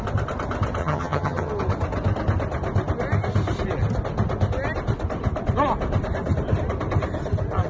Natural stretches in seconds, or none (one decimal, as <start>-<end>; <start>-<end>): 0.0-0.8; 1.5-7.7